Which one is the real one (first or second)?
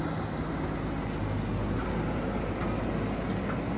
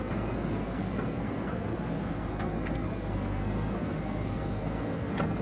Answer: first